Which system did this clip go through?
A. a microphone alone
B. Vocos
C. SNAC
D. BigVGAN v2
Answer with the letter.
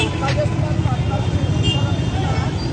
A